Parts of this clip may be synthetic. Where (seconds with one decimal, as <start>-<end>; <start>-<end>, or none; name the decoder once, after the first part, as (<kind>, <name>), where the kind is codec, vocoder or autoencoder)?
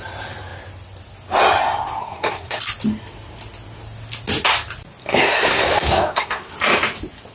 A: 2.0-2.6 (codec, SNAC); 5.0-6.5